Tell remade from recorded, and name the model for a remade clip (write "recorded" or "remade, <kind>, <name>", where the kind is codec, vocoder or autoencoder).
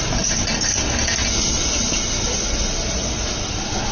recorded